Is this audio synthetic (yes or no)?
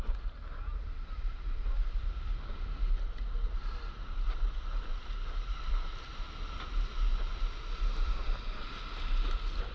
no